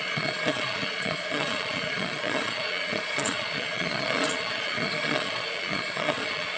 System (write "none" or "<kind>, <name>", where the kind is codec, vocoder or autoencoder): vocoder, Vocos